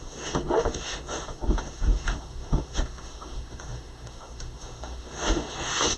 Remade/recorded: remade